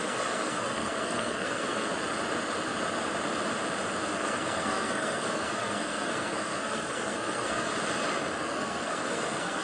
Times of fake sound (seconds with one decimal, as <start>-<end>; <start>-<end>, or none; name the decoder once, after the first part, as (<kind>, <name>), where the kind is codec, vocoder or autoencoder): 0.0-1.9 (codec, SNAC); 4.1-7.7; 8.4-9.6